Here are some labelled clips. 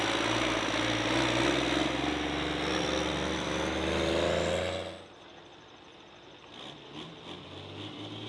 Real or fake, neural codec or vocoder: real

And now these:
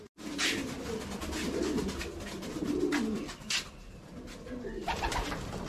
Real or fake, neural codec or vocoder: real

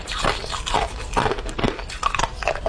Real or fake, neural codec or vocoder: real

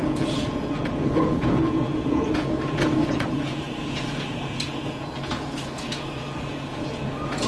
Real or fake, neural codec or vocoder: fake, vocoder, Vocos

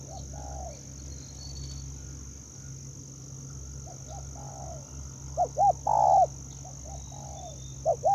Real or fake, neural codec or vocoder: real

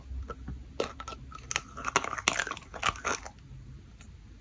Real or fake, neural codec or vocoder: real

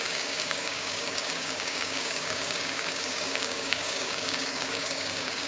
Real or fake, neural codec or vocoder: fake, codec, DAC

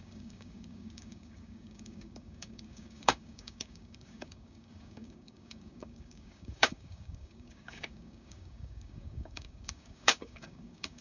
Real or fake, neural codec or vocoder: fake, codec, DAC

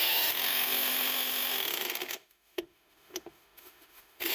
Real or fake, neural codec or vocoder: fake, autoencoder, DAC-VAE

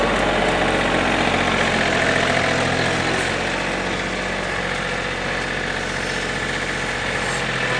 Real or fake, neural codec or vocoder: real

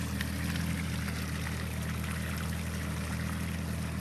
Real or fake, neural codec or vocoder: real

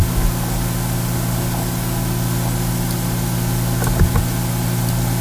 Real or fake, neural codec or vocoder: real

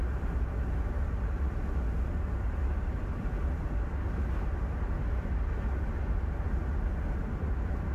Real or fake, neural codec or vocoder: real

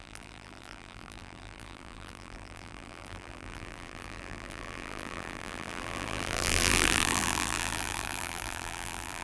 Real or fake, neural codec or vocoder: fake, vocoder, BigVGAN v2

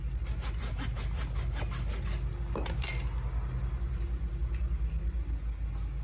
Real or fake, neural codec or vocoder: real